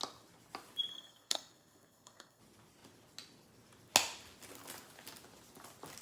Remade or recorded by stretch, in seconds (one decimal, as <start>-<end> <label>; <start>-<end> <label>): 0.0-0.9 recorded; 0.9-2.4 remade; 2.4-6.0 recorded